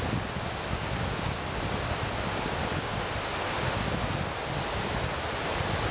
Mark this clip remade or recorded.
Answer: recorded